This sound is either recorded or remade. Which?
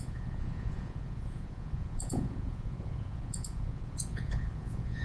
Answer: remade